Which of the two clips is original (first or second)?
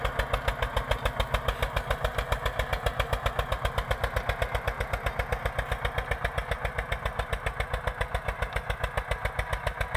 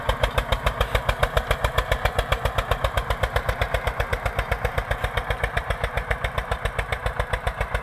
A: first